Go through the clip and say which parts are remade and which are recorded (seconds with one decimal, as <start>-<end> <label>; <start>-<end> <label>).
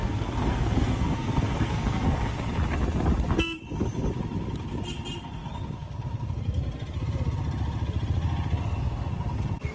0.0-2.3 remade; 2.3-9.7 recorded